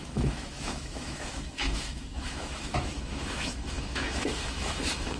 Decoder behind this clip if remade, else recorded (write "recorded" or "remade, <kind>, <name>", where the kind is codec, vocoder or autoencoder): remade, autoencoder, DAC-VAE